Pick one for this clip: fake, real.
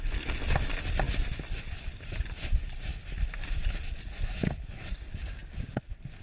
real